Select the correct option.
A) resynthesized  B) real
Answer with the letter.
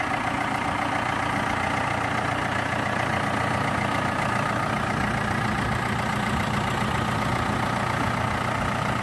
B